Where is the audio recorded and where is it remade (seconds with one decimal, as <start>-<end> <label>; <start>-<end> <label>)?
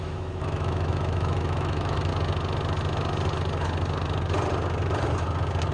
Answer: 0.0-2.1 remade; 2.1-5.7 recorded